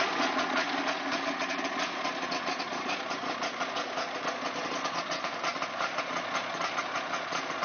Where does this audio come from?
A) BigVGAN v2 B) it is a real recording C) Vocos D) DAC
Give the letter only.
C